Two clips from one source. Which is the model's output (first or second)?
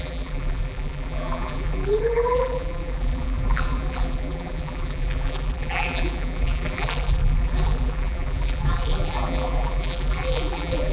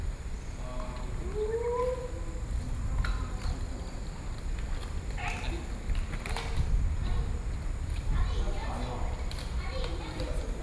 first